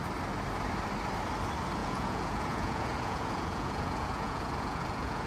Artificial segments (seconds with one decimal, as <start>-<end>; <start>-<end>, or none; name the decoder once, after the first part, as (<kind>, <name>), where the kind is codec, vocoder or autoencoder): 1.8-5.3 (vocoder, Vocos)